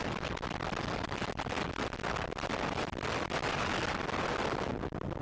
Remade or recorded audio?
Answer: recorded